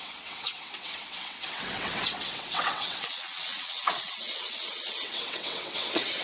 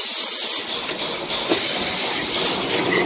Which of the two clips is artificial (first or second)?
first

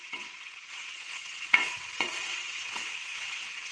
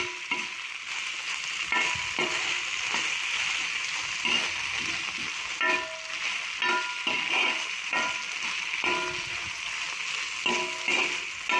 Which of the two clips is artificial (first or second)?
first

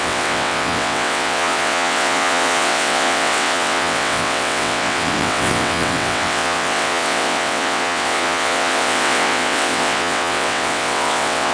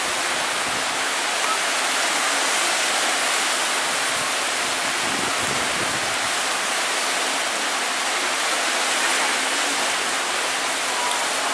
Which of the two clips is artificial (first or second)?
first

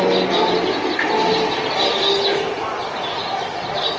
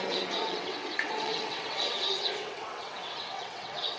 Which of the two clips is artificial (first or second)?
second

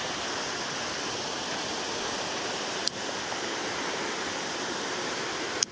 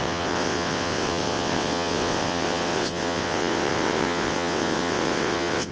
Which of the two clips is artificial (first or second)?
second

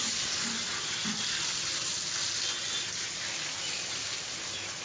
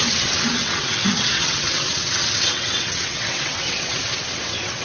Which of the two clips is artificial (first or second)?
second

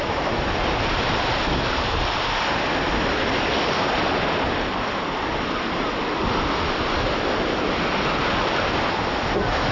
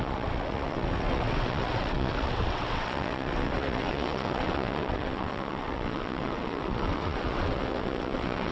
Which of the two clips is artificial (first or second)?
second